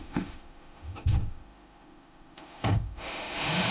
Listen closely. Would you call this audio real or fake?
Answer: fake